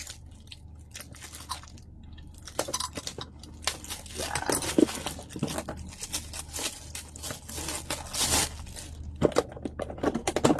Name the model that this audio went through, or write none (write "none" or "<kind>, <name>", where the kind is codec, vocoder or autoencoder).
none